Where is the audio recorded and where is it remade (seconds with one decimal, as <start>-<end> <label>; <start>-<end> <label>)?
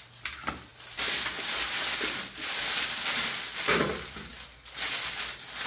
0.0-5.7 recorded